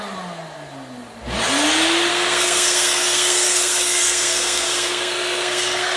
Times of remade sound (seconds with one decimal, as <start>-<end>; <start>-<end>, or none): 2.1-6.0